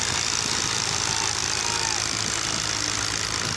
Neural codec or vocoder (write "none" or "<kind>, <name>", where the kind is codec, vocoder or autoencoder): none